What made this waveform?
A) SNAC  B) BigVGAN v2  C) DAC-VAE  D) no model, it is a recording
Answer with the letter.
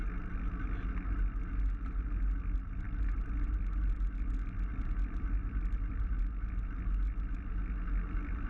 D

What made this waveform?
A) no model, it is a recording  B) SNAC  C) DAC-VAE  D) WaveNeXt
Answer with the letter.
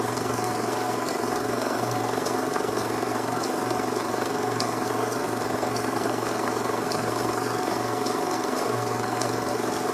B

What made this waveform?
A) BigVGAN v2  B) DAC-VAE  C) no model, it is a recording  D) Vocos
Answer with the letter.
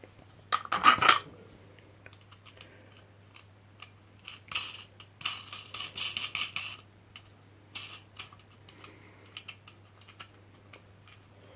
C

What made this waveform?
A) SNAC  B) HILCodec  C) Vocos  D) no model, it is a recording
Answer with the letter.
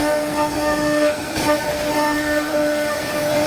A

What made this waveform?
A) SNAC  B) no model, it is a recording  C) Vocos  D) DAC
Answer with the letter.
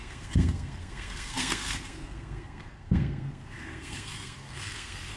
A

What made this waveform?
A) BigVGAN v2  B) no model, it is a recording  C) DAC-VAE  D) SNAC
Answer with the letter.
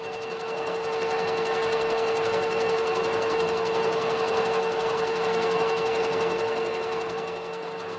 D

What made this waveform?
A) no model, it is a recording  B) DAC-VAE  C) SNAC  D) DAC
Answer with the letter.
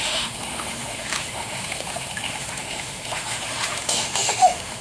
B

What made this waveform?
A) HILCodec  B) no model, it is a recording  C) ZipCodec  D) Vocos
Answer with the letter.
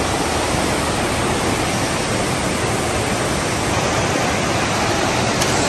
B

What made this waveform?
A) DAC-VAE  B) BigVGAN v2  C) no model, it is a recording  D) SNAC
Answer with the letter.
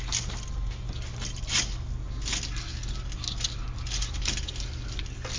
C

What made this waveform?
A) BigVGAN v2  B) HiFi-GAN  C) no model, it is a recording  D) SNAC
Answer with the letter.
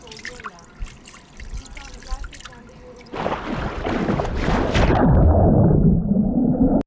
C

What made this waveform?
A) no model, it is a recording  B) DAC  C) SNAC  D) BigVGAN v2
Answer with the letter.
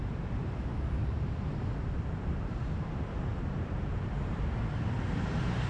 D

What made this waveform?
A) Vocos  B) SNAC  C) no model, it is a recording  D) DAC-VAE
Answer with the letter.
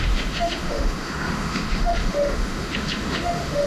D